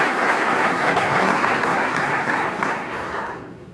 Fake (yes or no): yes